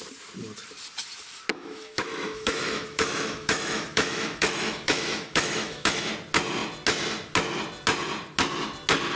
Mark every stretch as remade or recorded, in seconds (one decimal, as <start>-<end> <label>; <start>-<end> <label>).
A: 0.0-1.5 recorded; 1.5-6.1 remade; 6.1-9.2 recorded